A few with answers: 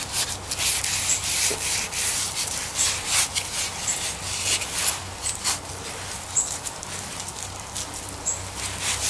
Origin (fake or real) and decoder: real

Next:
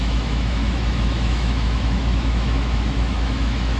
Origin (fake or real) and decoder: fake, autoencoder, DAC-VAE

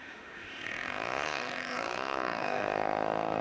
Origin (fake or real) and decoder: fake, autoencoder, DAC-VAE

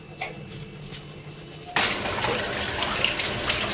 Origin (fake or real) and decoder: real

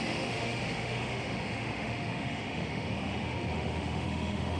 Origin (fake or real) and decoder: fake, autoencoder, DAC-VAE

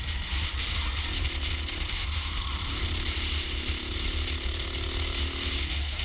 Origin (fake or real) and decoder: real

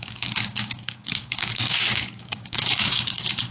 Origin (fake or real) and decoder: fake, codec, DAC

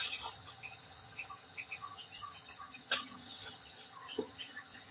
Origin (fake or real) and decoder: fake, vocoder, HiFi-GAN